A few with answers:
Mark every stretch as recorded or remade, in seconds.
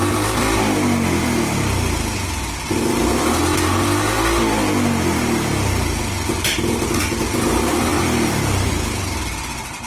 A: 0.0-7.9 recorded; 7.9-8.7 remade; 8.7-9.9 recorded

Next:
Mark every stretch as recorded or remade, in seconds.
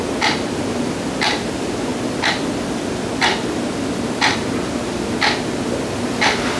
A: 0.0-6.6 recorded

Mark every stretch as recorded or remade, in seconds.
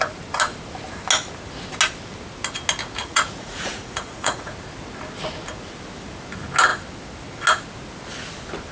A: 0.0-3.0 recorded; 3.0-4.5 remade; 4.5-8.7 recorded